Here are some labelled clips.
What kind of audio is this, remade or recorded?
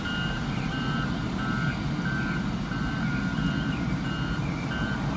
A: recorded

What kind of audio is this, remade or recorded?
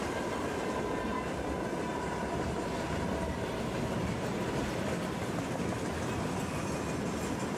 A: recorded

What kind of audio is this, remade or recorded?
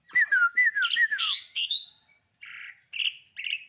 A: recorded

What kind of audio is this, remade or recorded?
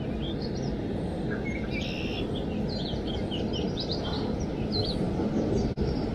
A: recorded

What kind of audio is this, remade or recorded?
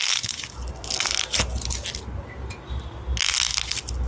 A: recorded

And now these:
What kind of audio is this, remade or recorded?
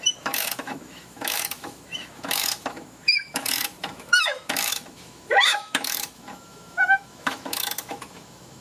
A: remade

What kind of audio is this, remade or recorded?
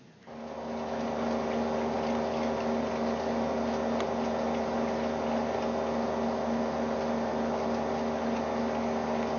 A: recorded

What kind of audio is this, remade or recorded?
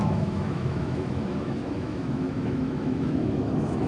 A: remade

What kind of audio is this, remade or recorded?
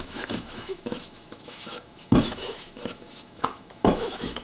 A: remade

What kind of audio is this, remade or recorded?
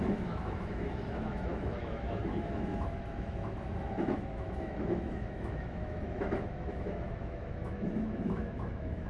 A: remade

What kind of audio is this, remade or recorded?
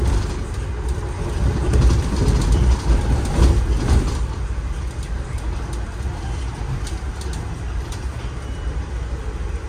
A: recorded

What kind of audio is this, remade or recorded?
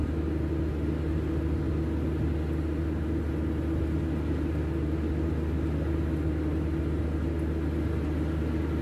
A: recorded